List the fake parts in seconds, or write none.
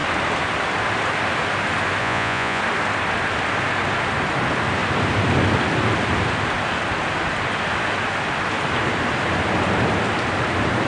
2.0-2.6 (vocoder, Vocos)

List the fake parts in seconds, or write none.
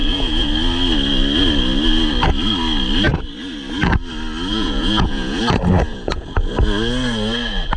0.0-0.5 (vocoder, Vocos); 4.5-5.4; 5.9-6.5